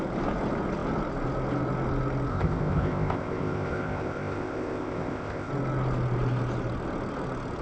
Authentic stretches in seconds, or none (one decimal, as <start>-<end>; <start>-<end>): 0.0-2.3; 5.5-7.6